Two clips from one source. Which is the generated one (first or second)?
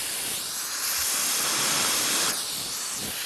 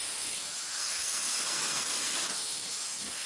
second